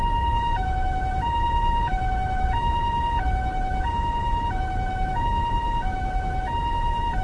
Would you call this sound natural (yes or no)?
no